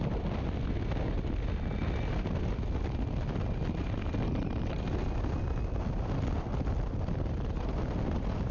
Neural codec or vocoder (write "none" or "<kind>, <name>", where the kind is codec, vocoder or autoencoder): none